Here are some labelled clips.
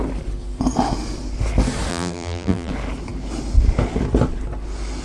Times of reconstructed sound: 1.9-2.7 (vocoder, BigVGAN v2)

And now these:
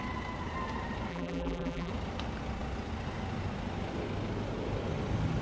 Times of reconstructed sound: 1.1-1.9 (vocoder, BigVGAN v2)

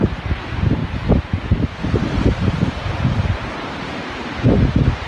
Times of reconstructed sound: 0.0-0.8 (vocoder, BigVGAN v2); 3.8-5.1

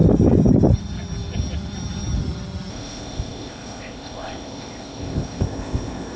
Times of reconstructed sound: 2.7-6.2 (codec, ZipCodec)

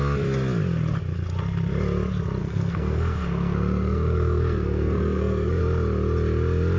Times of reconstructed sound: 2.4-5.6 (codec, SNAC)

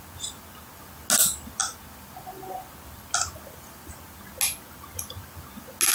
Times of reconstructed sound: none

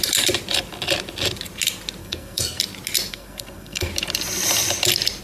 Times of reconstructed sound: 2.0-2.6 (codec, SNAC); 3.1-3.9

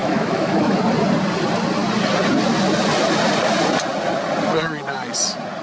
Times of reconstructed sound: 0.0-0.8 (autoencoder, DAC-VAE)